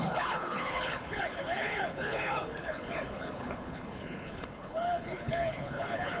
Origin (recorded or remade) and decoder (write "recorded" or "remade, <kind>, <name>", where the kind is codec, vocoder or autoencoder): remade, codec, HILCodec